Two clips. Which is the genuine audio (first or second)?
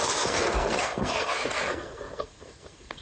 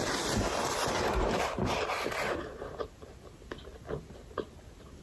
second